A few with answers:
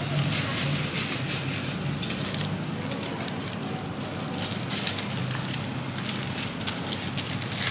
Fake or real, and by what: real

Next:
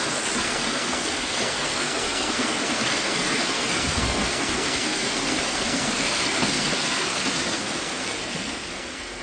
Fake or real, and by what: fake, codec, SNAC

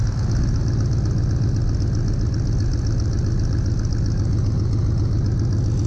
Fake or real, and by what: real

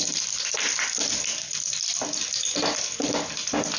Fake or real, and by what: real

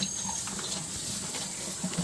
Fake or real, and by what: real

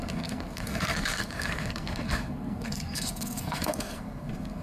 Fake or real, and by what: fake, codec, SNAC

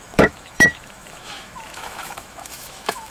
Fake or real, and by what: fake, autoencoder, DAC-VAE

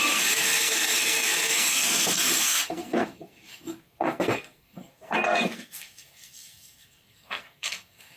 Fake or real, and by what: fake, codec, SNAC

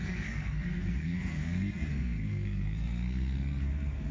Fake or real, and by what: fake, codec, SNAC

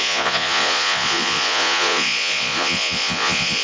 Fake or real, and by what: fake, vocoder, Vocos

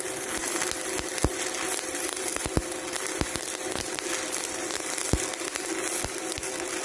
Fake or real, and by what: real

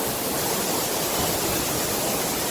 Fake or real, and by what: real